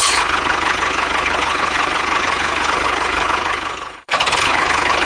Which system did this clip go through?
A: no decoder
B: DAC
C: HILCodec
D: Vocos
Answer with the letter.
C